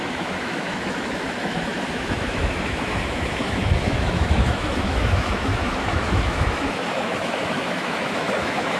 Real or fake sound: fake